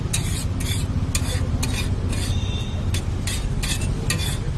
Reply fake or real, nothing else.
real